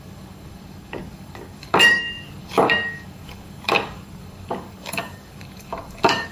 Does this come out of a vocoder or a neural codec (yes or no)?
yes